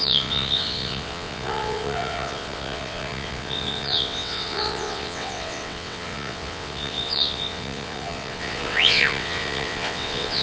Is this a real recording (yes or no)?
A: no